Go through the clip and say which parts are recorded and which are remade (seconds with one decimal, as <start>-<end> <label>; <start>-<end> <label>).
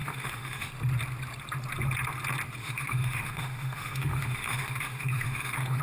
0.0-0.7 remade; 0.7-2.6 recorded; 2.6-5.8 remade